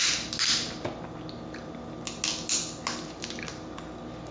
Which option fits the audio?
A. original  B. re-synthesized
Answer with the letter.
A